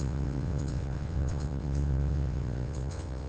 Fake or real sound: fake